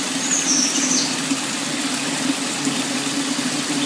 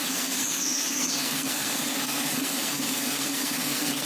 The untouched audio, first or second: first